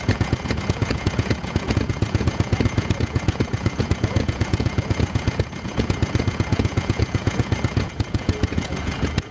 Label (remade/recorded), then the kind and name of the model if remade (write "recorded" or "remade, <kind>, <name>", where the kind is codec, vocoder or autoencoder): remade, vocoder, Vocos